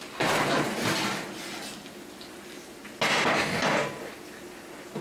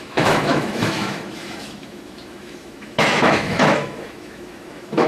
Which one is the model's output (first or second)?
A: second